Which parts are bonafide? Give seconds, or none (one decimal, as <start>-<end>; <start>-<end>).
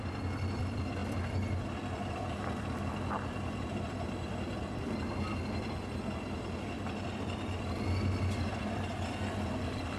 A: 0.0-10.0